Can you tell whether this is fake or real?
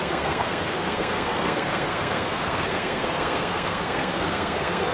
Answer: fake